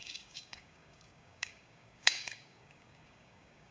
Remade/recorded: remade